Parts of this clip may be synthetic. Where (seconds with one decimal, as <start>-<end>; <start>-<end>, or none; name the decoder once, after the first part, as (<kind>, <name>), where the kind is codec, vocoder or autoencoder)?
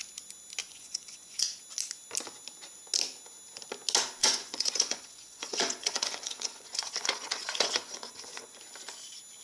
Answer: 0.6-1.6 (vocoder, Vocos); 4.2-8.6